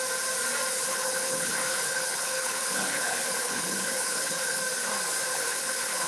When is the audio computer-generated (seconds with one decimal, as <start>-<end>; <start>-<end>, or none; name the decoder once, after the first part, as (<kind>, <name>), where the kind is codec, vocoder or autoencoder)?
0.9-4.6 (codec, HILCodec); 5.3-6.1

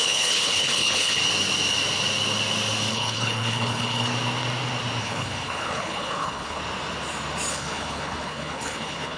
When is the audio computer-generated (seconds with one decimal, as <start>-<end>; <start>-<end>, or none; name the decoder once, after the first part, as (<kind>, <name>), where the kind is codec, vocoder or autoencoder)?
0.0-1.2 (codec, HILCodec); 2.9-4.1; 5.0-6.6; 7.5-9.2

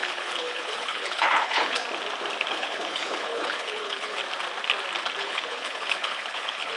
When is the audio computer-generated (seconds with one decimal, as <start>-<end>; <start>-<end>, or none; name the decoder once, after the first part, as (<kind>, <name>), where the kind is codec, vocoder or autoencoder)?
0.0-1.8 (codec, HILCodec); 2.5-4.2; 5.2-6.8